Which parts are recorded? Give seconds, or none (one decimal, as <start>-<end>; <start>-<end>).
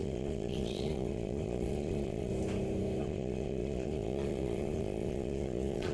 2.3-3.0